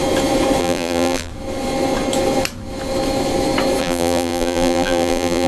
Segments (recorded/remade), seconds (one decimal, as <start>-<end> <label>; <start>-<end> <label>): 0.0-0.6 recorded; 0.6-1.3 remade; 1.3-3.8 recorded; 3.8-5.5 remade